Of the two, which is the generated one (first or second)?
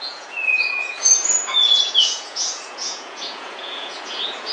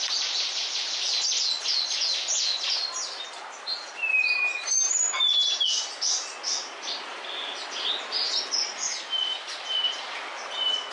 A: first